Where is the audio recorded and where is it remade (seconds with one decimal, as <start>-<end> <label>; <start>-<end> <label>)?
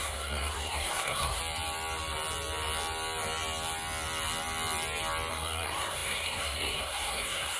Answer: 0.0-1.4 remade; 1.4-5.3 recorded; 5.3-7.6 remade